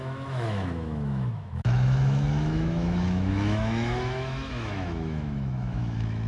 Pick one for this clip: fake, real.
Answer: fake